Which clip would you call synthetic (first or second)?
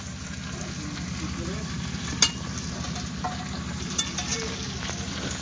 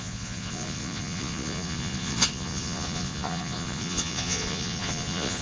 second